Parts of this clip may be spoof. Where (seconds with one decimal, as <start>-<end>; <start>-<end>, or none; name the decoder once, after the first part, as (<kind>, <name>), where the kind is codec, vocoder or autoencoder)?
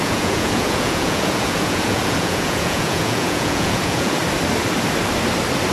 0.0-4.2 (vocoder, Vocos)